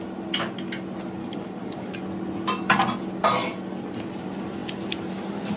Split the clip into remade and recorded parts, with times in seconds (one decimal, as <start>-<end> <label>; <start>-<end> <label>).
0.0-1.2 recorded; 1.2-2.0 remade; 2.0-5.6 recorded